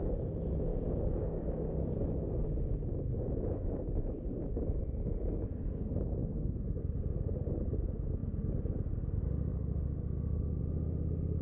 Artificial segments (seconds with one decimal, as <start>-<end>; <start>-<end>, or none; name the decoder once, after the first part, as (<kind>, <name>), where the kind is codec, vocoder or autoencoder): 0.7-4.8 (codec, DAC); 6.2-6.8; 9.5-10.6